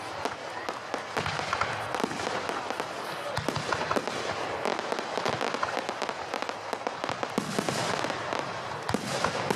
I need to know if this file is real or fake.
real